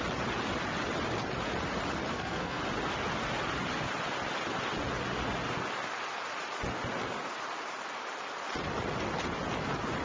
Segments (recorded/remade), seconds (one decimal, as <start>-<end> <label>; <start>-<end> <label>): 0.0-2.1 recorded; 2.1-2.6 remade; 2.6-10.0 recorded

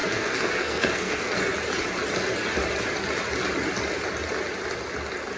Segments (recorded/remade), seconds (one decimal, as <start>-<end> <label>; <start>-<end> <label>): 0.0-1.4 remade; 1.4-5.4 recorded

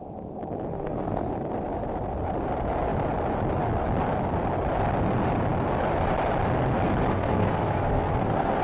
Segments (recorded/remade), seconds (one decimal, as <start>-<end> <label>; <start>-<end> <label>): 0.0-0.7 recorded; 0.7-1.3 remade; 1.3-7.1 recorded; 7.1-8.6 remade